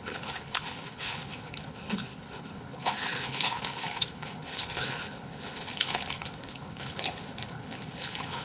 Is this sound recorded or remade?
remade